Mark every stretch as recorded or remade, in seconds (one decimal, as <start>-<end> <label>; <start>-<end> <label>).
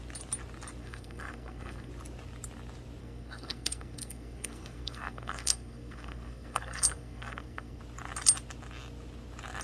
0.0-0.8 recorded; 0.8-1.9 remade; 1.9-3.0 recorded; 3.0-7.8 remade; 7.8-9.6 recorded